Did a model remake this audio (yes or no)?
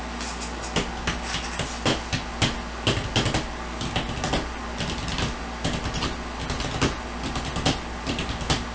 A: no